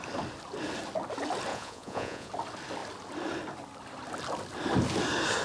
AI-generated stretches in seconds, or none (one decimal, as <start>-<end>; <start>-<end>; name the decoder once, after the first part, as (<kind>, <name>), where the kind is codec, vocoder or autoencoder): 1.5-2.3 (vocoder, Vocos)